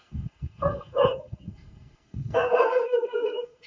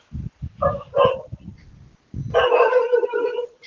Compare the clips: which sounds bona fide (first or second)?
second